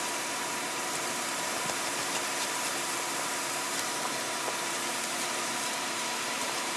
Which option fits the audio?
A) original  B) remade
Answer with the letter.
B